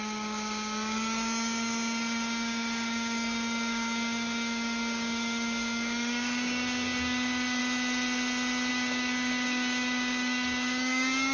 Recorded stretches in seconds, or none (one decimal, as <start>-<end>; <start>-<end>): 7.6-8.7